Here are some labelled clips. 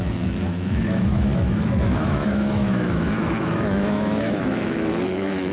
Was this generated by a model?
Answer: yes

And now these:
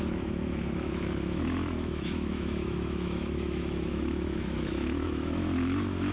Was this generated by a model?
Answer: yes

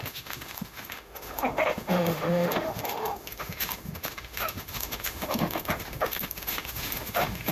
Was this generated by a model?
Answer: yes